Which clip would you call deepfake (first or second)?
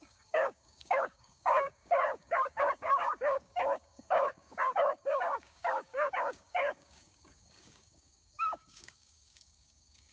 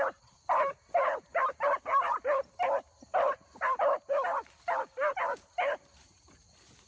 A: first